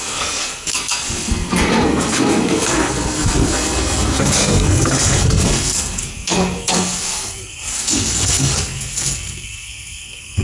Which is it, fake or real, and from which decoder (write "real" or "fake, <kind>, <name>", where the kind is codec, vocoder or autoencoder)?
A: fake, codec, SNAC